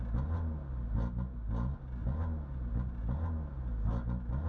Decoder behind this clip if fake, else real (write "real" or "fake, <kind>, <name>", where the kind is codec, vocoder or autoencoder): real